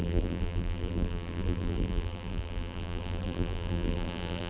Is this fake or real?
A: fake